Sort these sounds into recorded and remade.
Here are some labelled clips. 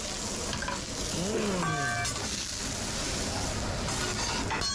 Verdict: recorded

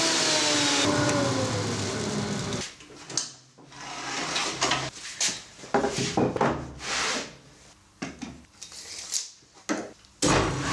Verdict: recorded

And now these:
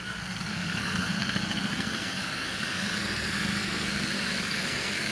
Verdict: remade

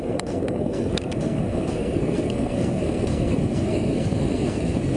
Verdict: remade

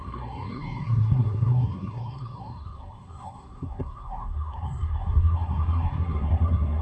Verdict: remade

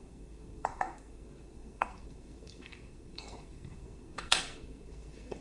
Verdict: remade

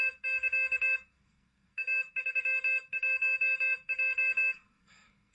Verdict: remade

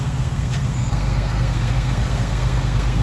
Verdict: remade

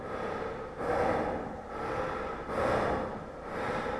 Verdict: recorded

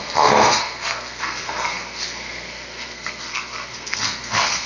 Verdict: remade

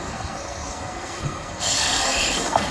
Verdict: remade